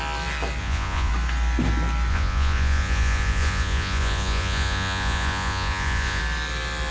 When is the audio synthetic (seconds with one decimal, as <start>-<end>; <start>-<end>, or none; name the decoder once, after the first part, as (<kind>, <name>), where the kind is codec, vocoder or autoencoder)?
0.6-1.1 (vocoder, Vocos); 2.1-6.2

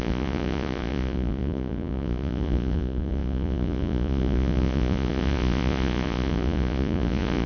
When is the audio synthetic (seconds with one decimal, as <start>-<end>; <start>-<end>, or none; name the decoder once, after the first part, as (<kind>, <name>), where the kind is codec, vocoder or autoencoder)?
0.0-7.5 (vocoder, Vocos)